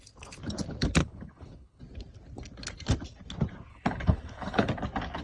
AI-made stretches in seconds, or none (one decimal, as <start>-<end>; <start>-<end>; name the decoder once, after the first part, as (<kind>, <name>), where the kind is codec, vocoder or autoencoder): 1.0-1.8 (codec, HILCodec); 3.7-4.7